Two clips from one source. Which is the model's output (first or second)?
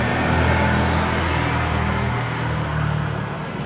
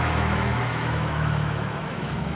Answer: second